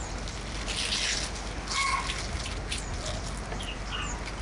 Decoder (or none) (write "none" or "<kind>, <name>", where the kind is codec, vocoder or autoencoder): none